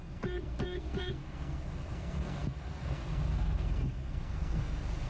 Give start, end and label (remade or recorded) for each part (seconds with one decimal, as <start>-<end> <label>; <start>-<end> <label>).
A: 0.0-5.1 remade